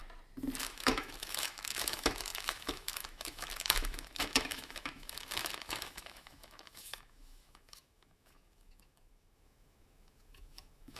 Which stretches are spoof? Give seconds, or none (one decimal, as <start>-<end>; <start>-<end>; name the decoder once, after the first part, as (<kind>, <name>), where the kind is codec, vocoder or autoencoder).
0.6-11.0 (autoencoder, DAC-VAE)